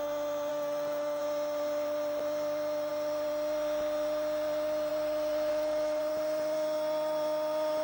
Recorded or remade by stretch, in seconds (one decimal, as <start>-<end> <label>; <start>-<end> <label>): 0.0-0.5 recorded; 0.5-1.2 remade; 1.2-5.5 recorded; 5.5-6.0 remade; 6.0-7.8 recorded